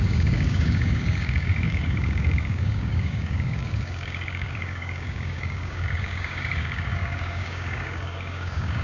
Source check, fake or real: fake